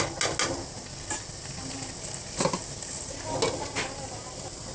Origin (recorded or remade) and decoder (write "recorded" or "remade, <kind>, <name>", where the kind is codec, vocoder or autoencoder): recorded